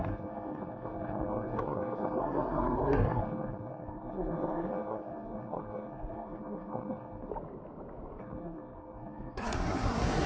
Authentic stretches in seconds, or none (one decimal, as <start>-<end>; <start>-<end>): 7.3-8.2